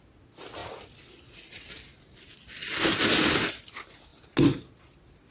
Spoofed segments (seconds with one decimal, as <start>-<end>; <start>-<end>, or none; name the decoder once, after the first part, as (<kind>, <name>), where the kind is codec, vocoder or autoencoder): none